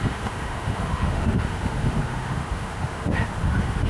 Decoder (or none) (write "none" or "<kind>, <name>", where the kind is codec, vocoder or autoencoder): autoencoder, DAC-VAE